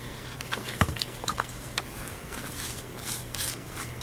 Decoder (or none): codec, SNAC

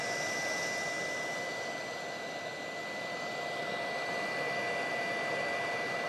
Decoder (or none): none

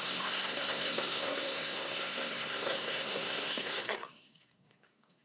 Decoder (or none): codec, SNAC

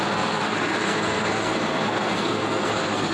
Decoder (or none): codec, SNAC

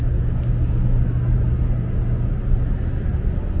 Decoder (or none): none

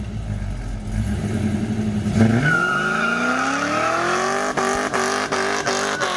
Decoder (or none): none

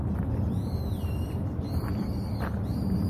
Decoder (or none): none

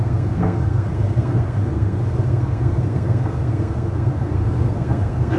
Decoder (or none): codec, SNAC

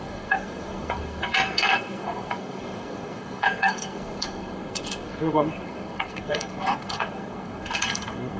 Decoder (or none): codec, SNAC